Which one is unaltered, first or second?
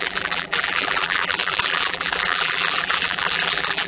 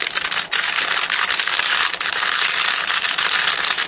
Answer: second